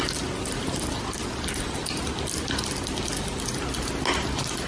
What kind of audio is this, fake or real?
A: real